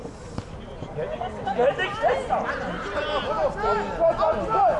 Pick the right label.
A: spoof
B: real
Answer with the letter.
B